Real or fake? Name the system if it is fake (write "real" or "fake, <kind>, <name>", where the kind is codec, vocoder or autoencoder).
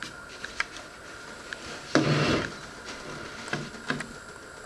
real